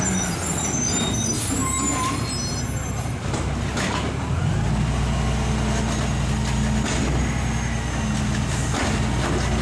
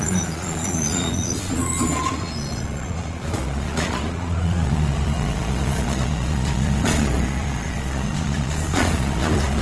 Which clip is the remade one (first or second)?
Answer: second